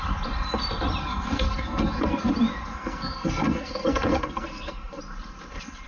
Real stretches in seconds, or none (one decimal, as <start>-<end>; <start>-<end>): 0.0-1.0; 2.3-2.7; 5.0-5.9